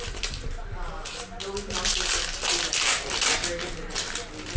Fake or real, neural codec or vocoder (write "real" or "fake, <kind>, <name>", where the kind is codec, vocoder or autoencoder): real